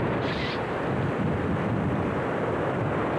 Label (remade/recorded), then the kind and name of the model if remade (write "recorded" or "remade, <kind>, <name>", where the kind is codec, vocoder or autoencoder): recorded